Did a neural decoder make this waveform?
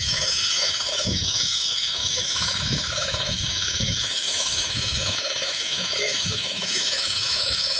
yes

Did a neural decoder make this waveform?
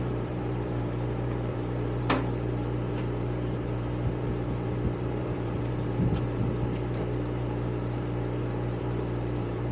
yes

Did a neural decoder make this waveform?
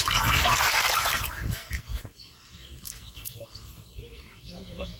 yes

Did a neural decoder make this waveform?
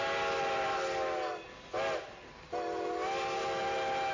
no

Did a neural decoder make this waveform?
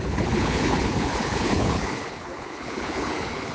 yes